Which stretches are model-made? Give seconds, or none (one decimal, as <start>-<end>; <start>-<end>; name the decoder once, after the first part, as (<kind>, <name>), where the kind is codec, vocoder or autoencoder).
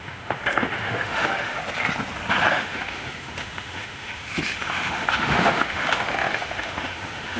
0.0-1.6 (autoencoder, DAC-VAE); 2.5-7.4